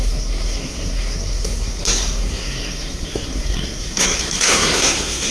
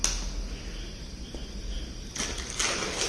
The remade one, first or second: first